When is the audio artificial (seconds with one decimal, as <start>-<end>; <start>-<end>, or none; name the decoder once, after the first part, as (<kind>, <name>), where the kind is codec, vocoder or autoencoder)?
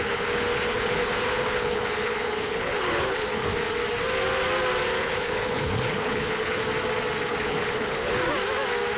0.0-3.5 (codec, HILCodec); 5.0-6.6; 7.3-8.2